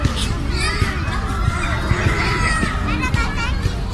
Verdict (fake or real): real